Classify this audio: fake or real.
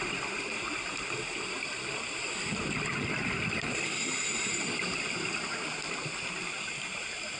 real